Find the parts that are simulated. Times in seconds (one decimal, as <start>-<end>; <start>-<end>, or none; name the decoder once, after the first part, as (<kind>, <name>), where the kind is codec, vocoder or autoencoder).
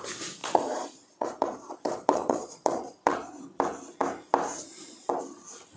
0.4-3.4 (vocoder, Vocos)